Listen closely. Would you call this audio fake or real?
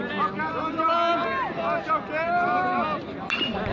real